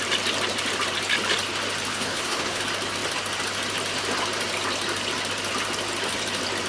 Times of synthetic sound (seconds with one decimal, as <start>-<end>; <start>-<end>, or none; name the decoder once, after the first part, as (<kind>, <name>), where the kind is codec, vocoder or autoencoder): 1.9-2.6 (codec, HILCodec)